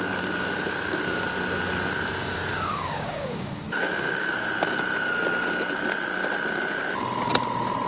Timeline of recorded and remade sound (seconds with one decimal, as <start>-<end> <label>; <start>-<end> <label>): 0.0-2.2 recorded; 2.2-4.5 remade; 4.5-7.9 recorded